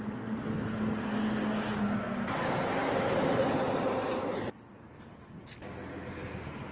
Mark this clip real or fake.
real